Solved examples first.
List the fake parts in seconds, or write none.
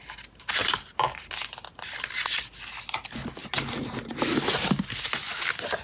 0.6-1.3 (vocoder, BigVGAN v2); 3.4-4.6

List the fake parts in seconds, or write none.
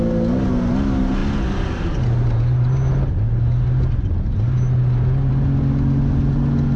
none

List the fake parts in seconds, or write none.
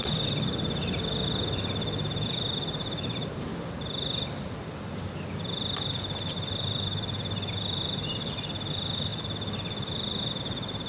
0.0-3.5 (vocoder, BigVGAN v2); 6.0-10.9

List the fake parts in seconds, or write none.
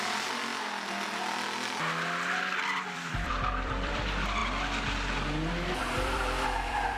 0.0-0.5 (vocoder, BigVGAN v2); 2.4-4.4; 5.5-7.0